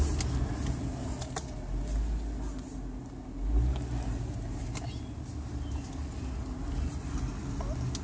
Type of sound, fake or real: real